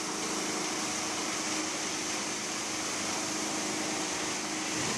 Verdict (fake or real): real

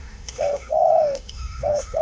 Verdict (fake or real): fake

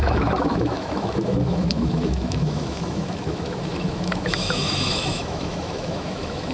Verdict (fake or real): fake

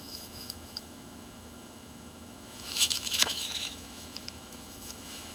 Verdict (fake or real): fake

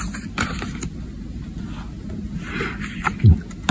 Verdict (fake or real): real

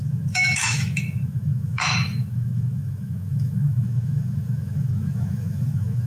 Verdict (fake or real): fake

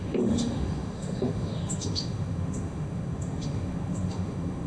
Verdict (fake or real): fake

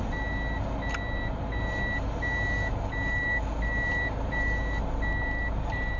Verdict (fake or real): real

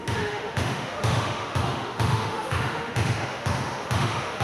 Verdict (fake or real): fake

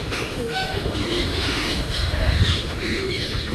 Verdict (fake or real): fake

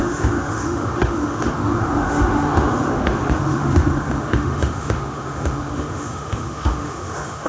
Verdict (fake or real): fake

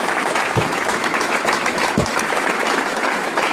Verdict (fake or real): fake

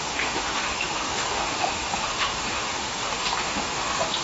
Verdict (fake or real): fake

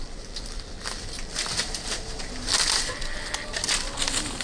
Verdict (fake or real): real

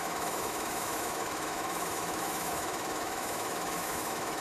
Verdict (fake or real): fake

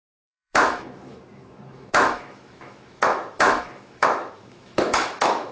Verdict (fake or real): fake